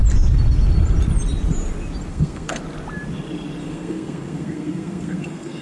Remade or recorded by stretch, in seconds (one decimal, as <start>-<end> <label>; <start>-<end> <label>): 0.0-2.1 recorded; 2.1-2.6 remade; 2.6-3.6 recorded; 3.6-5.6 remade